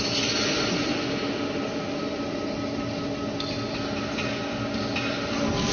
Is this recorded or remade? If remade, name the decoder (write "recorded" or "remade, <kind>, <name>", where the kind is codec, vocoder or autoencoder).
recorded